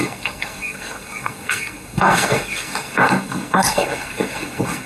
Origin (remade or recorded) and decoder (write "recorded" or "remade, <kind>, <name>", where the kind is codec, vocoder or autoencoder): remade, codec, SNAC